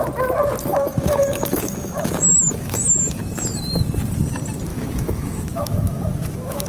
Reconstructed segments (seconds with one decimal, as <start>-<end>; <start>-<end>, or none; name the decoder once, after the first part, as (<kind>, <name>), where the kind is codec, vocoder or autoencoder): 0.7-3.2 (autoencoder, DAC-VAE); 4.7-6.7